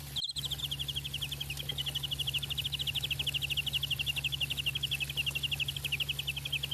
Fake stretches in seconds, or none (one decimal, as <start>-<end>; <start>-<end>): none